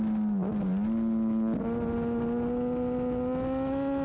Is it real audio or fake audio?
real